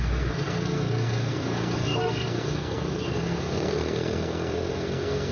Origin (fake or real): fake